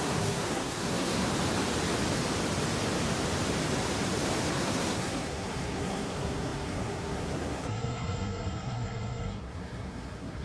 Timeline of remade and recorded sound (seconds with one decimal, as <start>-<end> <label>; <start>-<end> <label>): 0.0-1.3 remade; 1.3-4.5 recorded; 4.5-10.4 remade